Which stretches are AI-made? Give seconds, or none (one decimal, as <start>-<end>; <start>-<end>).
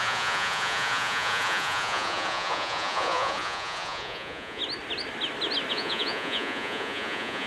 0.0-4.6; 5.7-7.5